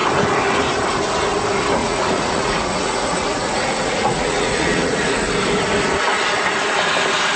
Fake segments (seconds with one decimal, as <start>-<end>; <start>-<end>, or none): 1.8-5.3